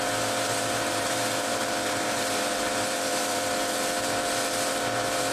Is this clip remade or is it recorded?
remade